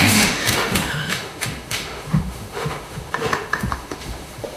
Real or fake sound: fake